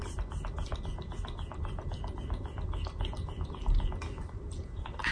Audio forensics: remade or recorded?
recorded